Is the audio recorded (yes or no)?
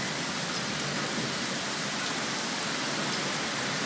yes